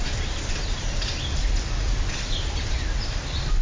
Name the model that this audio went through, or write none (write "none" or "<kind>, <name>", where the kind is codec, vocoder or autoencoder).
vocoder, BigVGAN v2